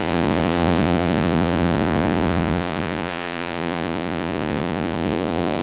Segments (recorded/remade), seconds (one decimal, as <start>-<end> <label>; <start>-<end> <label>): 0.0-5.6 remade